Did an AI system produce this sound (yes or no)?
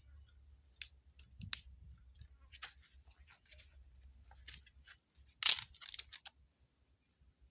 no